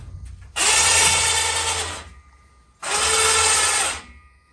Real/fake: real